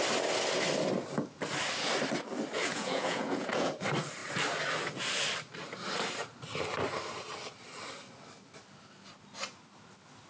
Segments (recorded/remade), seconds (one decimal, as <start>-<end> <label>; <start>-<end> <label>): 0.0-2.6 recorded; 2.6-3.7 remade; 3.7-10.3 recorded